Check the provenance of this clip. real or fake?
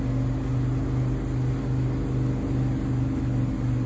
real